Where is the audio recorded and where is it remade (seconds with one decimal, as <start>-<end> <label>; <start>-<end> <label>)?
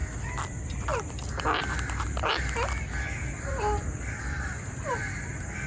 0.0-5.7 remade